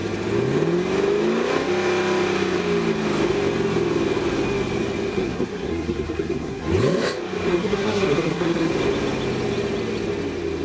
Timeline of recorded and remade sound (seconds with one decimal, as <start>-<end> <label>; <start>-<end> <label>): 0.0-5.1 recorded; 5.1-6.7 remade; 6.7-7.5 recorded; 7.5-8.7 remade; 8.7-10.6 recorded

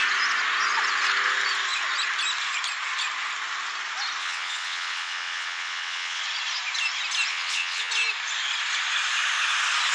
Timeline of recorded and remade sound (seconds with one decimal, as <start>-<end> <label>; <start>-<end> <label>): 0.0-4.2 recorded; 4.2-6.2 remade; 6.2-7.3 recorded; 7.3-7.9 remade; 7.9-9.9 recorded

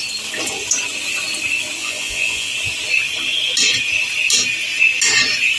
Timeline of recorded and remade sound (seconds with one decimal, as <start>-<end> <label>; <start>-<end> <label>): 0.0-1.8 recorded; 1.8-2.5 remade; 2.5-5.6 recorded